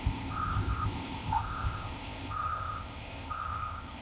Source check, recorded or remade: remade